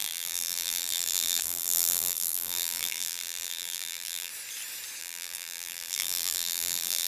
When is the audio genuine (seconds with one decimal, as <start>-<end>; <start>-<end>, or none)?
4.3-5.0